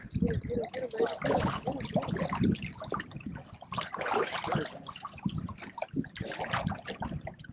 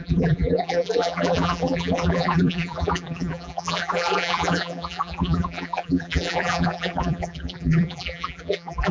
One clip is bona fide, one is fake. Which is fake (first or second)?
second